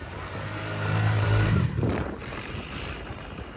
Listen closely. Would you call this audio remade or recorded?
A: remade